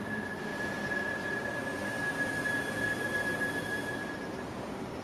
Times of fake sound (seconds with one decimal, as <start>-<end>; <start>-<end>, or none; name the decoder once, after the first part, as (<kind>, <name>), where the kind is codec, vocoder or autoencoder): 0.5-1.1 (vocoder, BigVGAN v2); 4.0-5.0